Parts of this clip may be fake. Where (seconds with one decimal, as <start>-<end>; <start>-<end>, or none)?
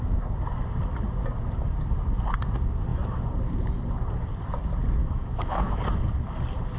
5.0-5.8